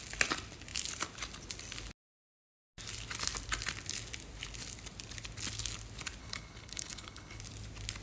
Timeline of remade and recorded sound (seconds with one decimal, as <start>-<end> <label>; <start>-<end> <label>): 0.0-6.2 recorded; 6.2-7.4 remade; 7.4-8.0 recorded